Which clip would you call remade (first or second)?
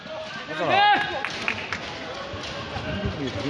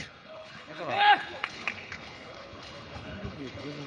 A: second